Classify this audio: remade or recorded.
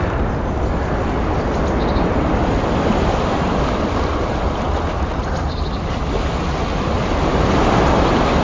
recorded